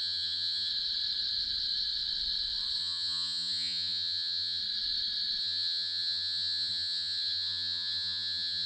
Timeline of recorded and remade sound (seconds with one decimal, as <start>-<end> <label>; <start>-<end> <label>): 0.0-0.7 remade; 0.7-2.8 recorded; 2.8-4.6 remade; 4.6-5.4 recorded; 5.4-8.7 remade